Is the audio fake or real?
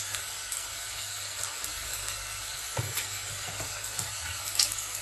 fake